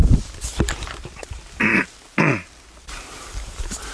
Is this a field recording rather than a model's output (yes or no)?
yes